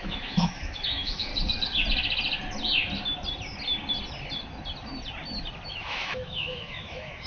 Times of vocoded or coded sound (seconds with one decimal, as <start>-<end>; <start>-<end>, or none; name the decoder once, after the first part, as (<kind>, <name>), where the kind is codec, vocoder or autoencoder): 0.0-1.3 (autoencoder, DAC-VAE); 5.7-7.3